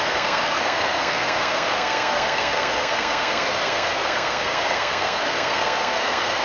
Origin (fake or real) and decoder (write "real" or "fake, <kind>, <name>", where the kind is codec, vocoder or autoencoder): fake, codec, SNAC